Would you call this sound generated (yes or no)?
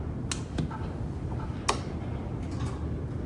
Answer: no